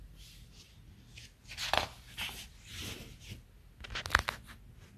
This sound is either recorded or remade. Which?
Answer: recorded